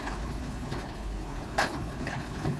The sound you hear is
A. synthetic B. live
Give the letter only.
A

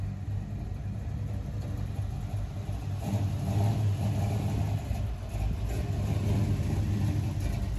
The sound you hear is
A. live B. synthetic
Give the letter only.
A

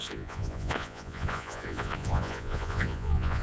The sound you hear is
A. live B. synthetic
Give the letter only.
B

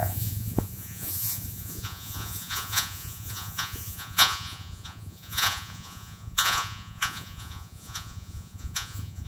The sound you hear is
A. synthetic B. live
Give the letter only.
A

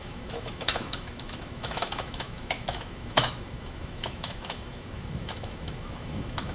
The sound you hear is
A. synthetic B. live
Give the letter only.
A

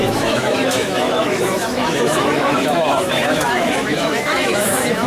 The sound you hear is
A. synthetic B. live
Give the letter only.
A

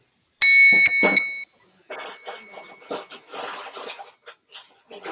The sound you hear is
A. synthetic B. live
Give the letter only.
B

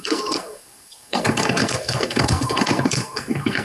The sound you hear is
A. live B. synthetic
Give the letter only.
B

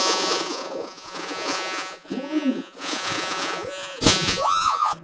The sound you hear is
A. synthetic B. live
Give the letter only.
A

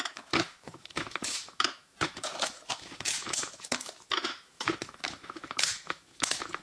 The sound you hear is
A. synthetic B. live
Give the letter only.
A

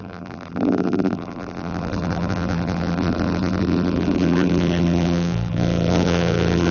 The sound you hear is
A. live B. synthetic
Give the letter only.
B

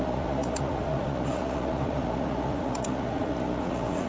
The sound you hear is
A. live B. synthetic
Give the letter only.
B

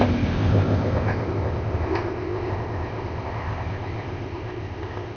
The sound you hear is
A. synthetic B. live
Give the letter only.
A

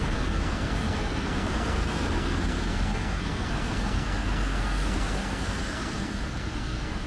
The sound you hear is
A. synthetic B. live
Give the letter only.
A